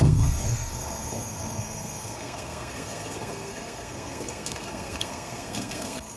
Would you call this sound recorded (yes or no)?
no